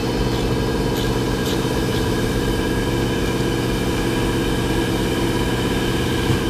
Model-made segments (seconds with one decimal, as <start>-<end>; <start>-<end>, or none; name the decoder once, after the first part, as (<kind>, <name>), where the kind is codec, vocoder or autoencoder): 1.4-2.8 (vocoder, BigVGAN v2)